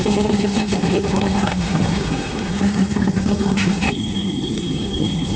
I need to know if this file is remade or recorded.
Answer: remade